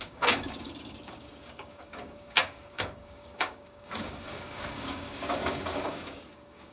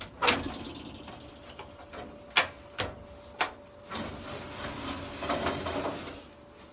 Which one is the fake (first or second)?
first